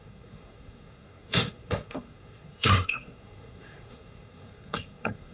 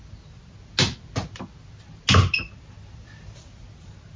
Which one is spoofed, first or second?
first